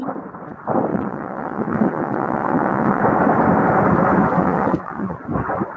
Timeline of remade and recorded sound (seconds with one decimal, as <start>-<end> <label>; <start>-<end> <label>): 0.0-0.9 recorded; 0.9-3.0 remade; 3.0-4.4 recorded; 4.4-5.2 remade; 5.2-5.8 recorded